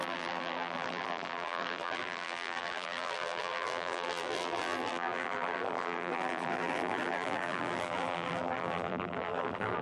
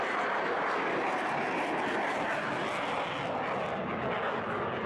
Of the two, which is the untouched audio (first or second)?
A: second